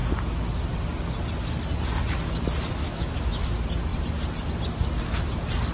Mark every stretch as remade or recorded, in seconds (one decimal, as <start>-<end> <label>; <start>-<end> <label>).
0.0-2.8 recorded; 2.8-3.4 remade; 3.4-5.7 recorded